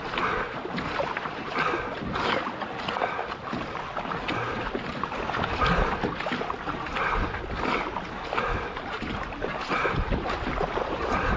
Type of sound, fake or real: real